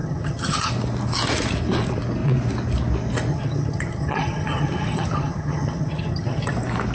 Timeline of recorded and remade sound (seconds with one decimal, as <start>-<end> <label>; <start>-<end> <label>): 0.0-0.7 remade; 0.7-3.3 recorded; 3.3-6.5 remade; 6.5-6.9 recorded